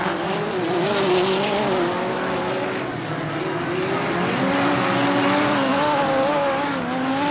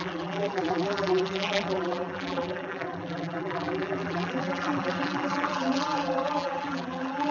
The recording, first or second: first